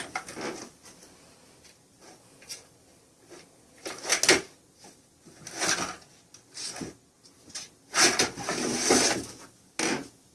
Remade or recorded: recorded